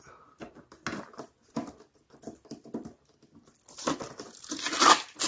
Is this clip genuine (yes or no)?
yes